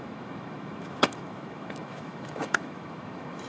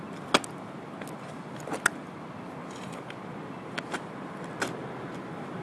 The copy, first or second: first